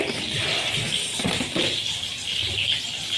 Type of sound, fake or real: real